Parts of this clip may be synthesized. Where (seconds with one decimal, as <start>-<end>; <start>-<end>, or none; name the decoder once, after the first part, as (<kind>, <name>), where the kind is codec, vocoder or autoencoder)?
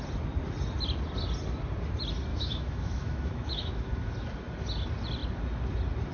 2.3-4.1 (autoencoder, DAC-VAE)